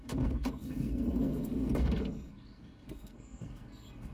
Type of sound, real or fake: fake